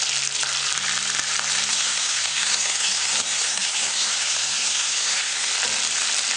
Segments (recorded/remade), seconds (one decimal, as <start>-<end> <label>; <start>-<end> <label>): 0.0-1.7 recorded; 1.7-5.5 remade; 5.5-6.4 recorded